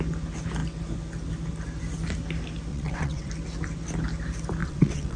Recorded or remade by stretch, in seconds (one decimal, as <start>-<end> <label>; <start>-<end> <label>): 0.0-2.7 recorded; 2.7-3.3 remade; 3.3-4.6 recorded; 4.6-5.2 remade